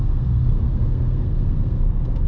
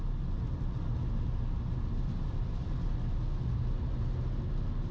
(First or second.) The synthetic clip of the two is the first